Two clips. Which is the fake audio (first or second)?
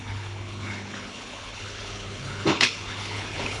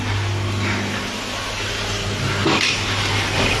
first